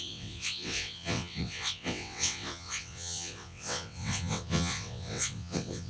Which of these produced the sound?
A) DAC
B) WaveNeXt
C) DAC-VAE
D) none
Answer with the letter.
B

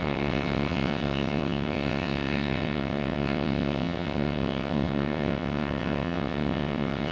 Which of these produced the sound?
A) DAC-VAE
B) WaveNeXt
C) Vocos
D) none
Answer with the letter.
B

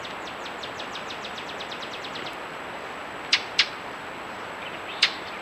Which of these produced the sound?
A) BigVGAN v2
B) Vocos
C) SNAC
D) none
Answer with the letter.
A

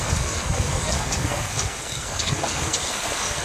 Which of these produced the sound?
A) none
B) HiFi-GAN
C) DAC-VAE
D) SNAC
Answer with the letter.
D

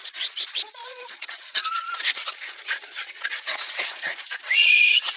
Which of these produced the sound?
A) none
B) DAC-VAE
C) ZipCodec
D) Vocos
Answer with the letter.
D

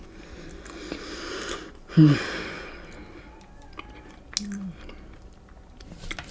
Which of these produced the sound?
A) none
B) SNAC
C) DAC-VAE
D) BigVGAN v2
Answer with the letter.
A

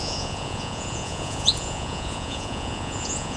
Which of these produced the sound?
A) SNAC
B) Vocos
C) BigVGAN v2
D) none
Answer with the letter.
B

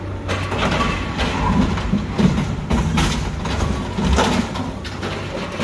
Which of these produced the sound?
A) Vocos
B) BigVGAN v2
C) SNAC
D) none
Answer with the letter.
D